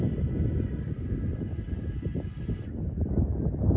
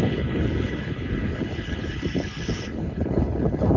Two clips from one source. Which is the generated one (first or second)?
second